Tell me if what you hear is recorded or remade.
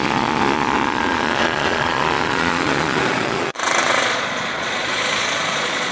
remade